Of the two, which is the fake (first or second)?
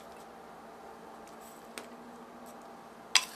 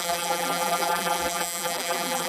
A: second